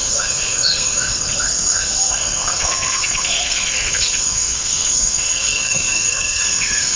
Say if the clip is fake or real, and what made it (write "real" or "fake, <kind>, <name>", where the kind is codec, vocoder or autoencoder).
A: fake, codec, SNAC